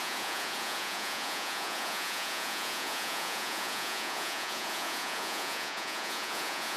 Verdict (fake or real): fake